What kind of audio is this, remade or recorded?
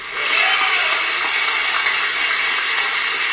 recorded